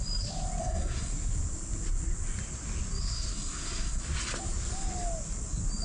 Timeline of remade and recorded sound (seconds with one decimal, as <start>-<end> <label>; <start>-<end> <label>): 0.0-0.6 recorded; 0.6-1.1 remade; 1.1-3.0 recorded; 3.0-4.0 remade; 4.0-5.8 recorded

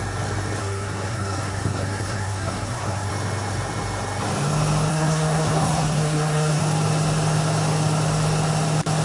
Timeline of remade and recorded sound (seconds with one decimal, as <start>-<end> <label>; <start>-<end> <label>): 0.0-0.6 recorded; 0.6-3.1 remade; 3.1-4.9 recorded; 4.9-6.6 remade; 6.6-9.0 recorded

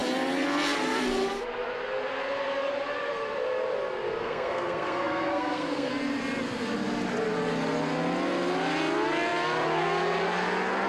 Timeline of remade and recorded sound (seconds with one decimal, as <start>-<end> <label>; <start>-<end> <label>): 0.0-4.2 recorded; 4.2-5.9 remade; 5.9-10.9 recorded